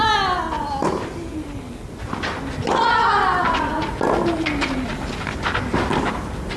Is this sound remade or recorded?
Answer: recorded